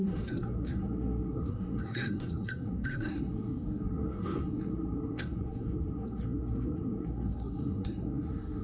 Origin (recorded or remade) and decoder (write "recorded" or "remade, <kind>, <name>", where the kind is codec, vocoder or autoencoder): remade, codec, SNAC